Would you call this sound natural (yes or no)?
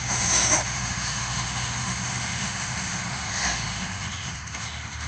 no